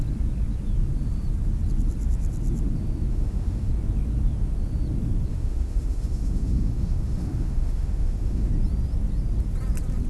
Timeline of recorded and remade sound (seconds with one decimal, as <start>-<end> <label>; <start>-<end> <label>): 0.0-3.1 recorded; 3.1-3.7 remade; 3.7-5.3 recorded; 5.3-8.5 remade; 8.5-10.1 recorded